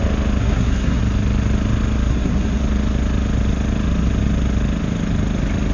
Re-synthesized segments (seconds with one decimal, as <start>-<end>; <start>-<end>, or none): 0.4-1.0; 2.1-2.6